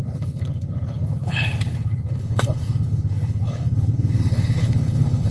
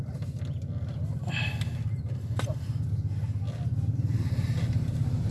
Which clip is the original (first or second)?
second